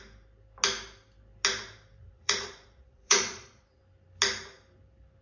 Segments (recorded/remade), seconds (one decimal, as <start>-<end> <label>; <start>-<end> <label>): 0.0-2.0 recorded; 2.0-3.8 remade; 3.8-5.2 recorded